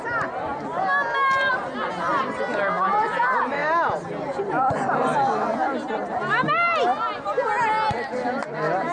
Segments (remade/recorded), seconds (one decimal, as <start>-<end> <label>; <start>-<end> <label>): 0.0-0.5 remade; 0.5-1.9 recorded; 1.9-3.6 remade; 3.6-4.4 recorded; 4.4-6.2 remade; 6.2-7.9 recorded; 7.9-8.9 remade